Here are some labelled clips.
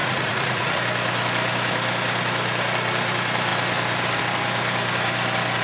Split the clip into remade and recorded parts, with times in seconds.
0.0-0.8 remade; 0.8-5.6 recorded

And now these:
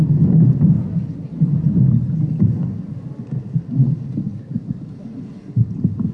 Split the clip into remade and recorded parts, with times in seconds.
0.0-6.1 recorded

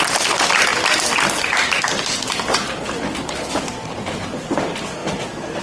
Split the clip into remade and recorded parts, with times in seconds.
0.0-5.6 recorded

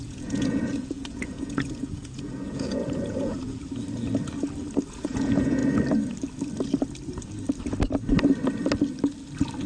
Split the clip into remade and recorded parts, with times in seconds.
0.0-3.6 remade; 3.6-4.9 recorded; 4.9-5.6 remade; 5.6-9.7 recorded

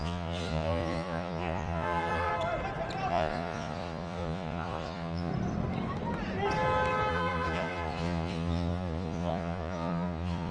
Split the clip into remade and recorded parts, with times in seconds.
0.0-2.3 remade; 2.3-3.1 recorded; 3.1-5.3 remade; 5.3-7.1 recorded; 7.1-10.5 remade

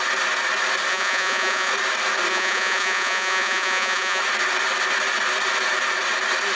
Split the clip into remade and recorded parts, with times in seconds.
0.0-0.9 recorded; 0.9-1.7 remade; 1.7-2.3 recorded; 2.3-4.2 remade; 4.2-6.5 recorded